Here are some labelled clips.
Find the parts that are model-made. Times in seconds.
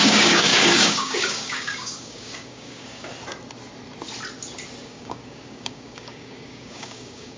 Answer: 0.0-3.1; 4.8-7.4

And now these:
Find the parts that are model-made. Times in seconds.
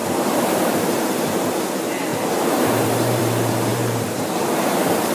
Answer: 0.0-1.5; 2.1-3.2; 3.7-5.1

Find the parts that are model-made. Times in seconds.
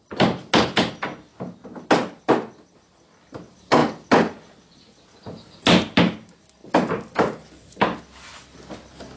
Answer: 6.6-8.0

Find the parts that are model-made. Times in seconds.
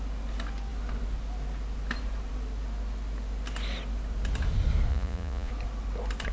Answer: 4.9-5.5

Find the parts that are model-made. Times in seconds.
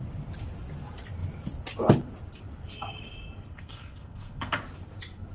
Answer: 3.5-4.6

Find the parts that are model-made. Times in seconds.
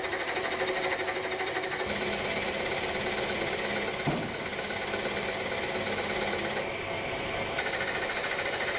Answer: none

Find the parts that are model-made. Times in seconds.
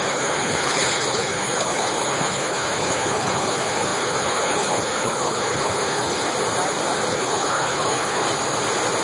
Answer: 0.0-6.3; 7.1-8.2